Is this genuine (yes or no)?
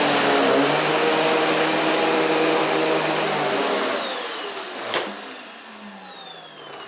yes